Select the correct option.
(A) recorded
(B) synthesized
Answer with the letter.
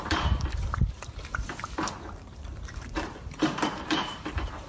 B